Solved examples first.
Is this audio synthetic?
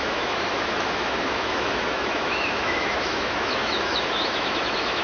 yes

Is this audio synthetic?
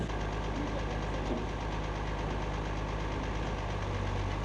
no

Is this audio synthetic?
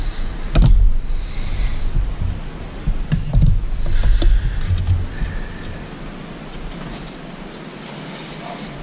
no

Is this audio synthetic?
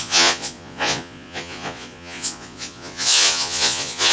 yes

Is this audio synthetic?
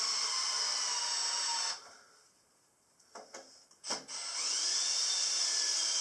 no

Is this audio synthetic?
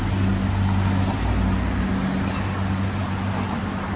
no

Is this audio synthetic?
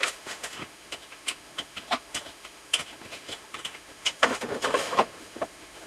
yes